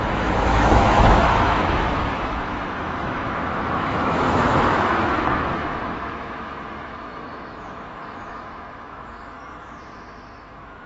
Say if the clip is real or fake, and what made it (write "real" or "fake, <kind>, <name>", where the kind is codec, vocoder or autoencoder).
fake, autoencoder, DAC-VAE